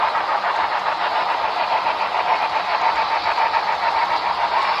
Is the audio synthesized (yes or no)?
yes